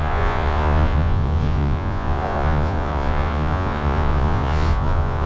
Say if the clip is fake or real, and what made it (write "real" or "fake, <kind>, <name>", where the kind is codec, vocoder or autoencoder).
fake, vocoder, Vocos